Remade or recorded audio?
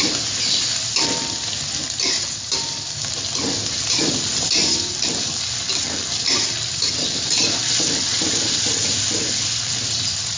remade